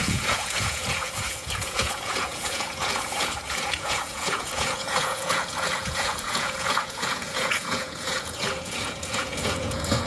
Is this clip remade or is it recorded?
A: remade